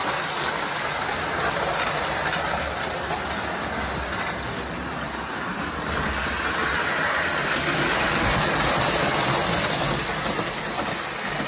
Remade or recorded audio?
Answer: recorded